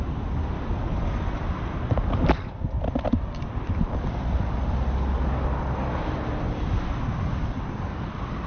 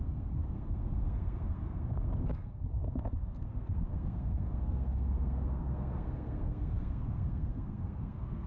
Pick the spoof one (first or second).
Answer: second